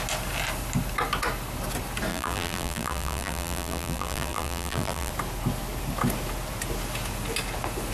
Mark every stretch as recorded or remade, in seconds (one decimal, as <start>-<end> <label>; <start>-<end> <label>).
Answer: 0.0-2.1 recorded; 2.1-5.1 remade; 5.1-7.9 recorded